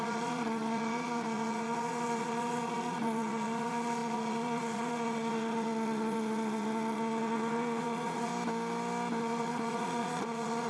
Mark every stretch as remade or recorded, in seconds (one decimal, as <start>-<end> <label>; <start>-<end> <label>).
0.0-8.3 remade; 8.3-9.2 recorded; 9.2-10.7 remade